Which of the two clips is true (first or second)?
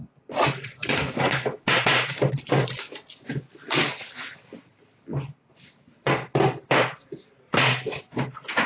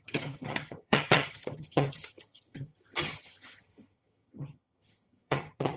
first